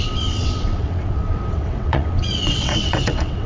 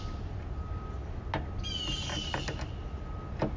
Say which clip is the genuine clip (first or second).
second